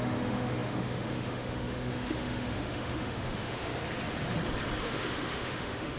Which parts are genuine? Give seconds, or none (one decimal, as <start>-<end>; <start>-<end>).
3.7-4.8